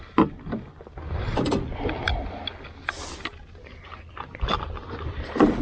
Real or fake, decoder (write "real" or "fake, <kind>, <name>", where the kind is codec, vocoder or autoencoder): real